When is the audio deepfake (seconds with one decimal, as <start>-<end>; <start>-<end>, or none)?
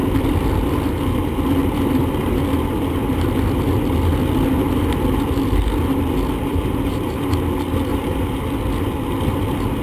6.5-7.3; 7.9-8.4